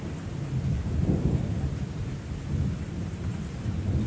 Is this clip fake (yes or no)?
no